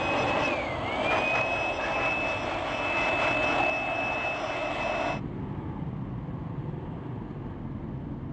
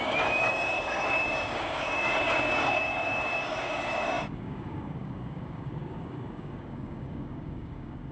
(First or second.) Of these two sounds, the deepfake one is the second